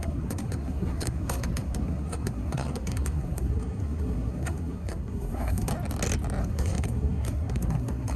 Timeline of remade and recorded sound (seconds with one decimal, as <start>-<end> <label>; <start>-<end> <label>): 0.0-5.7 remade; 5.7-6.4 recorded; 6.4-8.2 remade